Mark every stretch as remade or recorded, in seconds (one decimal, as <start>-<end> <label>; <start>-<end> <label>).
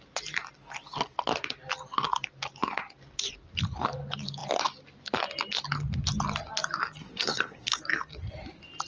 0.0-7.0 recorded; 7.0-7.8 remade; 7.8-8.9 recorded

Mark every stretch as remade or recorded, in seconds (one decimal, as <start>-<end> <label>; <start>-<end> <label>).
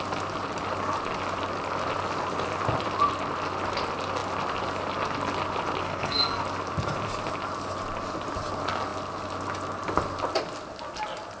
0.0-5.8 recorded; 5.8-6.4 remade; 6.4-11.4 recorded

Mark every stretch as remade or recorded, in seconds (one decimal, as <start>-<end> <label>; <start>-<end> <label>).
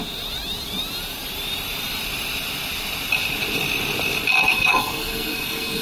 0.0-4.5 recorded; 4.5-5.8 remade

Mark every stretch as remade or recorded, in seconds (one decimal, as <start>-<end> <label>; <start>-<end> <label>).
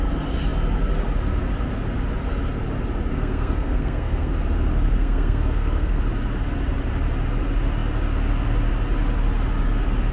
0.0-3.1 recorded; 3.1-4.3 remade; 4.3-4.7 recorded; 4.7-6.0 remade; 6.0-10.1 recorded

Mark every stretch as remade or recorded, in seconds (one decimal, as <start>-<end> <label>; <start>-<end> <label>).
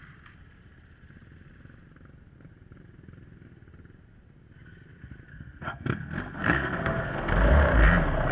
0.0-5.3 recorded; 5.3-7.3 remade; 7.3-8.3 recorded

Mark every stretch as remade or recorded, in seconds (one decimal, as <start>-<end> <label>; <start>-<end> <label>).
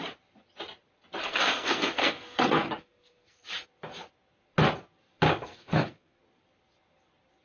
0.0-1.2 recorded; 1.2-3.5 remade; 3.5-5.3 recorded; 5.3-6.2 remade; 6.2-7.4 recorded